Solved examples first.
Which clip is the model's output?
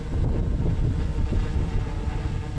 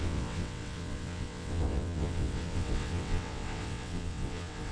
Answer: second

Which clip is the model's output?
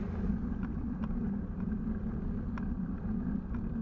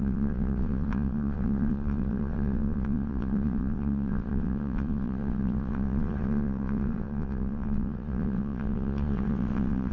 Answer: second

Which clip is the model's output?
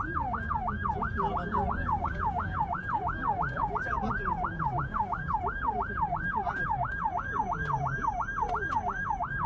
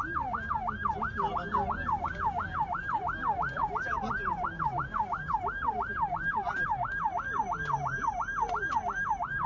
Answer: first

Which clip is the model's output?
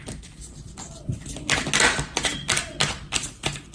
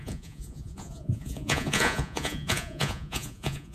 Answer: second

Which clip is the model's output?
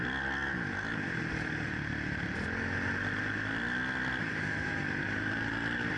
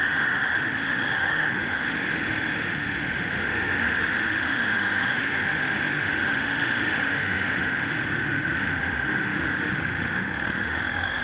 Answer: second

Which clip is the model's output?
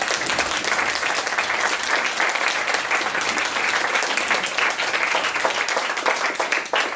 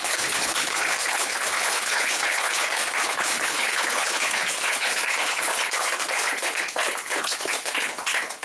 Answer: second